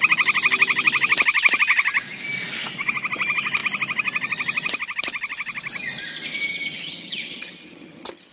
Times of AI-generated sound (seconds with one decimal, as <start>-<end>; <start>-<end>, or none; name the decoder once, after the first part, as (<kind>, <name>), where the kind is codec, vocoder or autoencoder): 6.5-8.3 (vocoder, HiFi-GAN)